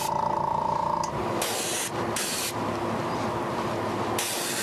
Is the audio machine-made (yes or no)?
no